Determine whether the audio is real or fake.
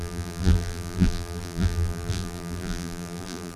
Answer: fake